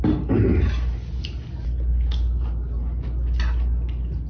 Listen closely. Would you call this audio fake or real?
real